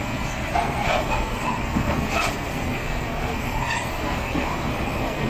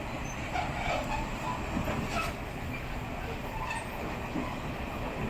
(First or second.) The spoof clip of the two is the first